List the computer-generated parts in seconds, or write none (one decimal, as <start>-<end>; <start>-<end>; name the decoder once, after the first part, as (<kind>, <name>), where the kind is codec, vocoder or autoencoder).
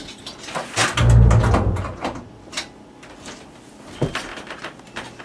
none